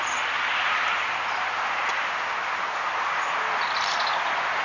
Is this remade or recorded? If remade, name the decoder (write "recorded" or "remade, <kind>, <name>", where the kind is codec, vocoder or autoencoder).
recorded